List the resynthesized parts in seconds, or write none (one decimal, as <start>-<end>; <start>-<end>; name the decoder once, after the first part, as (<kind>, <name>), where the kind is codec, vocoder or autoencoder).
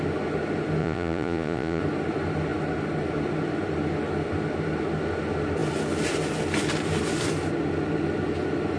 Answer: 0.8-1.8 (vocoder, Vocos)